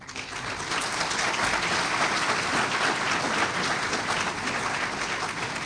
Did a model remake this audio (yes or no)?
no